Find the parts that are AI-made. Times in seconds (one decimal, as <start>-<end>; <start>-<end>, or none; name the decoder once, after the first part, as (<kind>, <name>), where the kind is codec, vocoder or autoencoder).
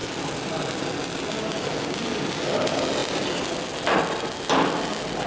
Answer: none